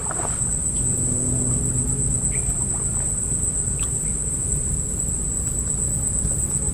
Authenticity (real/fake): real